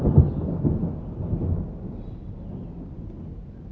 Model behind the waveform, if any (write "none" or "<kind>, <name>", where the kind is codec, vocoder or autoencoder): none